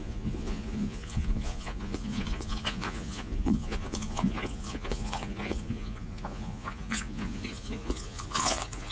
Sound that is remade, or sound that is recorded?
remade